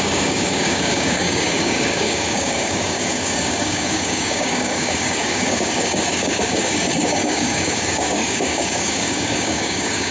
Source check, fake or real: fake